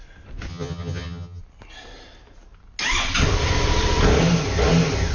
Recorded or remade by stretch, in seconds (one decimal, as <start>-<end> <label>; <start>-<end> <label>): 0.0-0.5 recorded; 0.5-1.4 remade; 1.4-5.1 recorded